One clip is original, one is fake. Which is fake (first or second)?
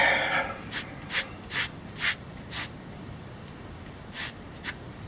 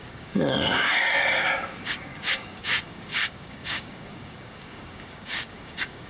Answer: second